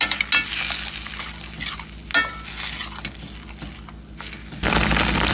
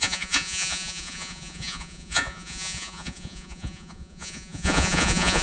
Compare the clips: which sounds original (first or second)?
first